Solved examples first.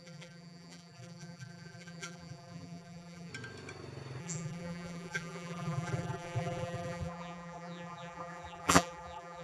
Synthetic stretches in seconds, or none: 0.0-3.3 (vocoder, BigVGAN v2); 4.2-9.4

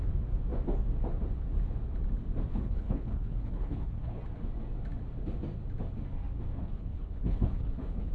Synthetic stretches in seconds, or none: 2.5-4.2 (codec, HILCodec); 6.5-8.1